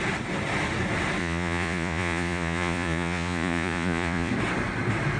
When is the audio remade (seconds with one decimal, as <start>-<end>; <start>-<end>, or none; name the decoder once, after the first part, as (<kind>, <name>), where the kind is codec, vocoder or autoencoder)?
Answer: 1.2-4.3 (vocoder, Vocos)